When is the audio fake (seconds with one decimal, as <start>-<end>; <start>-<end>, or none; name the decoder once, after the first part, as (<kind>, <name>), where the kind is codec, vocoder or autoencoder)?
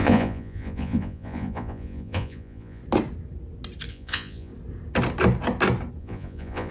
0.0-2.8 (vocoder, Vocos); 3.9-4.5; 6.0-6.7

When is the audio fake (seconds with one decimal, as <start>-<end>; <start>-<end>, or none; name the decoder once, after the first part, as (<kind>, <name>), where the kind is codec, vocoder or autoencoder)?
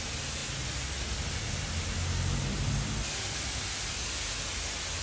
none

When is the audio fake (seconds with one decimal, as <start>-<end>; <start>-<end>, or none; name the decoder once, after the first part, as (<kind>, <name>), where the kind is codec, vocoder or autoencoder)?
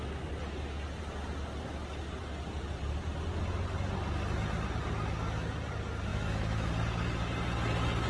6.1-6.7 (autoencoder, DAC-VAE)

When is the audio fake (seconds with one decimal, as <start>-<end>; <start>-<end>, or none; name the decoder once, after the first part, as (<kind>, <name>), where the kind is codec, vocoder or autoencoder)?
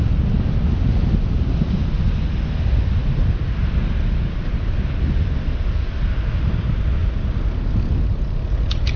none